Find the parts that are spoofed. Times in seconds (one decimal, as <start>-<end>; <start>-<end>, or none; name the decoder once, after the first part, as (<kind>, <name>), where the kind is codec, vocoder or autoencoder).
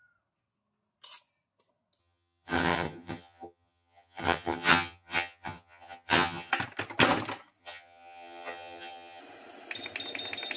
2.0-6.5 (vocoder, HiFi-GAN); 7.6-9.2